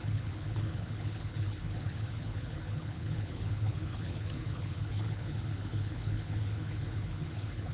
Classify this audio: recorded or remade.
remade